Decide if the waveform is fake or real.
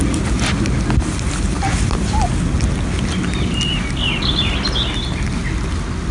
real